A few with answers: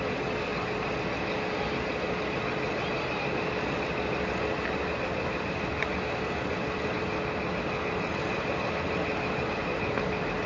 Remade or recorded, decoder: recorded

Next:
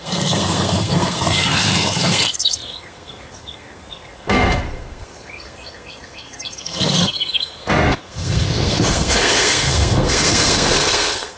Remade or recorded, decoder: remade, codec, SNAC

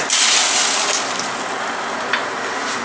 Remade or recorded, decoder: recorded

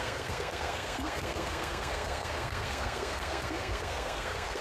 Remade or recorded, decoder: remade, codec, SNAC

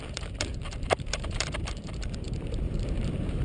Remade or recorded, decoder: remade, vocoder, BigVGAN v2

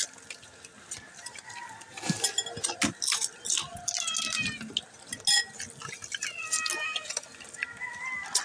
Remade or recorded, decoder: recorded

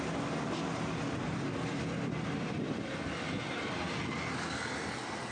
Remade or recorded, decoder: recorded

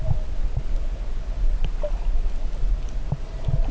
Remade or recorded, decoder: recorded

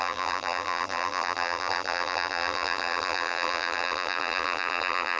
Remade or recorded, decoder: remade, vocoder, BigVGAN v2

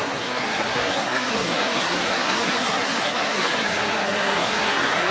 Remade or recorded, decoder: remade, codec, SNAC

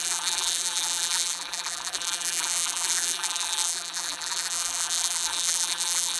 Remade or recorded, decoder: remade, vocoder, BigVGAN v2